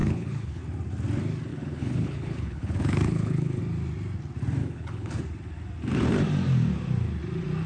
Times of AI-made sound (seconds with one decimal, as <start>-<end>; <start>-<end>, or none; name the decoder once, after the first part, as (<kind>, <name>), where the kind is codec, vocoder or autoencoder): 0.0-0.6 (codec, HILCodec); 1.5-3.6; 4.6-5.2